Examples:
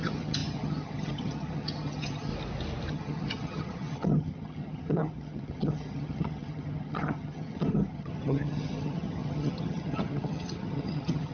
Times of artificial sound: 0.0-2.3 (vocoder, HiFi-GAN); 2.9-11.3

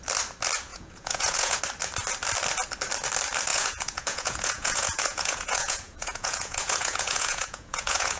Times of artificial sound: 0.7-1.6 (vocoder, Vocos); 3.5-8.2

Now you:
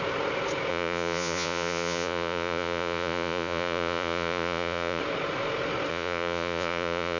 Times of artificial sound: 0.7-5.0 (vocoder, Vocos); 5.9-7.2